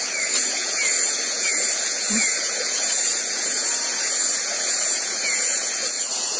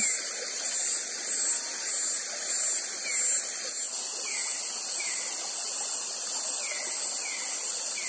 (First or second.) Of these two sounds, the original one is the second